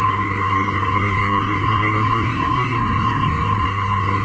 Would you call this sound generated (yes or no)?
yes